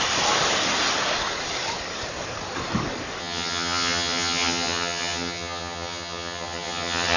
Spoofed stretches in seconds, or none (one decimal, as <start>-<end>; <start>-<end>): 3.2-7.2